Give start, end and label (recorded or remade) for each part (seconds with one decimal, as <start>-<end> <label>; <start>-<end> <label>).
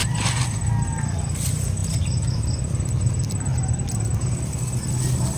0.0-5.4 recorded